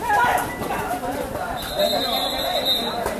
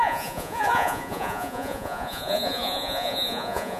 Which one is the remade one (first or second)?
second